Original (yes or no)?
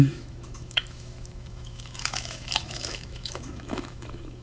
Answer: no